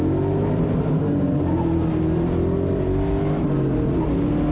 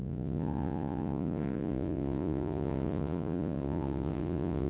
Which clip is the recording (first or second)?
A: first